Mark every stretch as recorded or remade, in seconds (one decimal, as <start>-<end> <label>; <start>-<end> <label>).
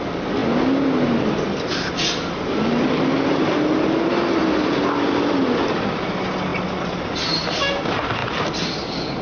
0.0-9.2 recorded